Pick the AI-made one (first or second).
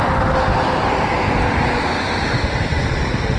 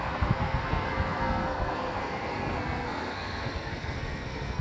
second